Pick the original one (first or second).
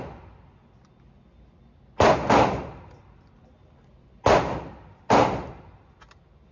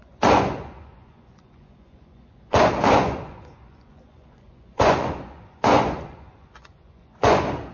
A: first